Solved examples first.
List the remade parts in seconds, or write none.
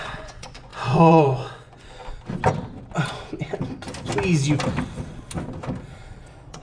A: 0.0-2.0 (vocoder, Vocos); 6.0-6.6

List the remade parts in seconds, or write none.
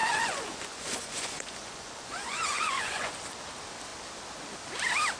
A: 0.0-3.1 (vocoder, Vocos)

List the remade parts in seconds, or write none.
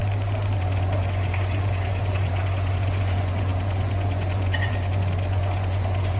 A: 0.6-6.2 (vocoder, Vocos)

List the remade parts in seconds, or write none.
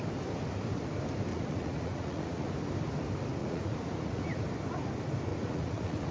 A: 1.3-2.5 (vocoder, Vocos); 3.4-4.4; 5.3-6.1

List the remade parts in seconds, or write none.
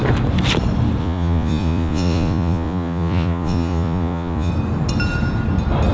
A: 1.0-4.5 (vocoder, Vocos)